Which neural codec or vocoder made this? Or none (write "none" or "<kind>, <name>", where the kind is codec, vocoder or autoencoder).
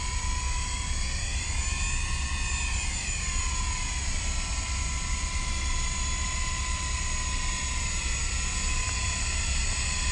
none